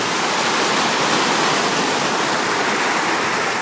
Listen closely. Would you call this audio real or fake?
real